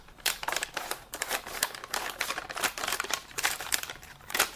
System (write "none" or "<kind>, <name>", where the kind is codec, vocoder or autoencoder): vocoder, BigVGAN v2